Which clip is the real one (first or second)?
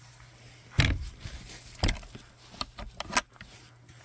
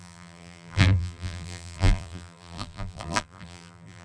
first